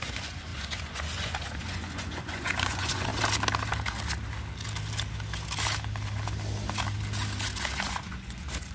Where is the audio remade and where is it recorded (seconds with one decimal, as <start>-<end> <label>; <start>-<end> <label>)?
0.0-3.1 remade; 3.1-7.9 recorded; 7.9-8.7 remade